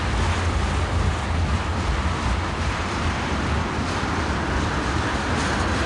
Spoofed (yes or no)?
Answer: no